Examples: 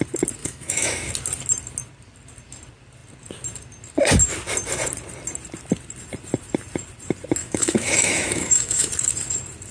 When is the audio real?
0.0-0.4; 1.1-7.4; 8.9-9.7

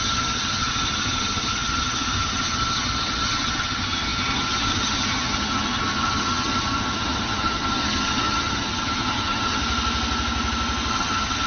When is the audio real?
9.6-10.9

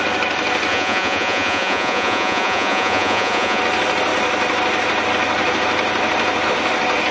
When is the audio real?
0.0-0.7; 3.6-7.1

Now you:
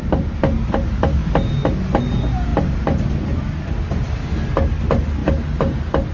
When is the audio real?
0.0-1.2; 2.0-2.5; 3.7-6.1

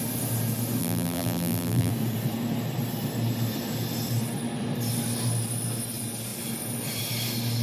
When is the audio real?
0.0-0.8; 1.9-7.6

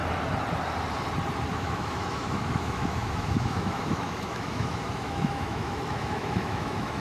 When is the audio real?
0.0-1.5